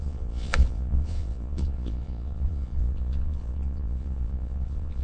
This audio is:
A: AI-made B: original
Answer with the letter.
A